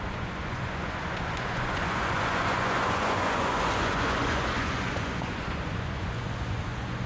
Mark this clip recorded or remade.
remade